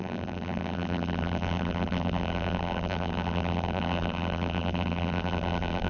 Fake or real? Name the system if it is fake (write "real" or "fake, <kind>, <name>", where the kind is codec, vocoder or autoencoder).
fake, vocoder, BigVGAN v2